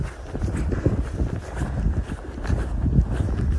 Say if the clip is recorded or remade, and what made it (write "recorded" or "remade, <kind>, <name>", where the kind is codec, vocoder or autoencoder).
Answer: recorded